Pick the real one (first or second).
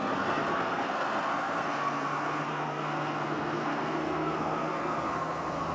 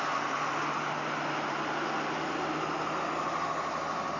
second